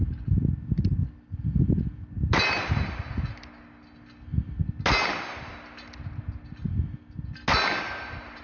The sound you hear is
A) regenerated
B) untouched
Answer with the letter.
B